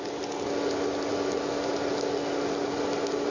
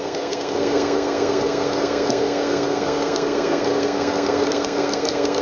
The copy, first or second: second